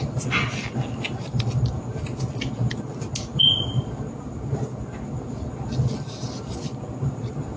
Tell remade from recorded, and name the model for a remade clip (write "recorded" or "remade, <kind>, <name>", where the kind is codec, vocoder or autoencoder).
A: recorded